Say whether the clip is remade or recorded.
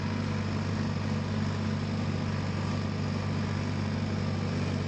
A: recorded